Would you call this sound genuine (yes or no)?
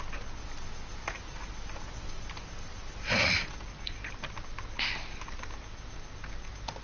yes